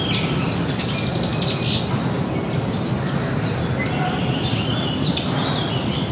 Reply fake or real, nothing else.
real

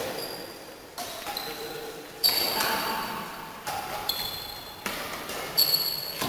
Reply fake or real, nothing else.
fake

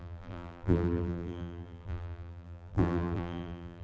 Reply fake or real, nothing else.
fake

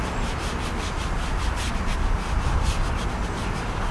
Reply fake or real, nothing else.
real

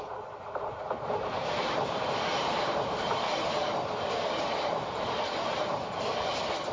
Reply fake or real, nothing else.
fake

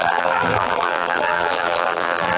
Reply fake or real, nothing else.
fake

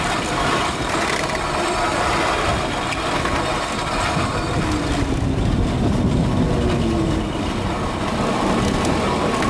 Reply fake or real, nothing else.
real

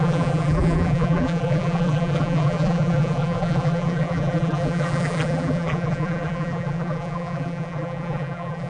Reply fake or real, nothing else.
fake